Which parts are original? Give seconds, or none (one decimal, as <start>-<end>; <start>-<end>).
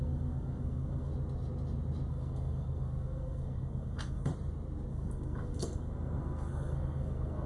1.1-2.1; 4.3-4.9